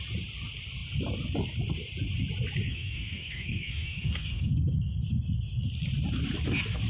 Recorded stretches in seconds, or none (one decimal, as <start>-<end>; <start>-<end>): 0.0-2.7; 4.5-6.9